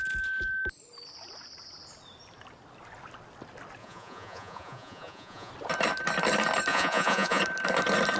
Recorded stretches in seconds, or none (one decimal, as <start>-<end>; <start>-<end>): 0.0-3.8; 5.5-6.7; 7.4-8.2